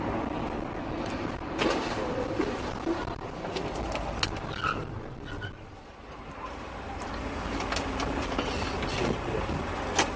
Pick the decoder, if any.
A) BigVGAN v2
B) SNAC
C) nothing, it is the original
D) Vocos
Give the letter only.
C